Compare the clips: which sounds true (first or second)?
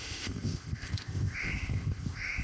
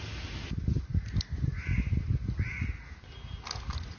second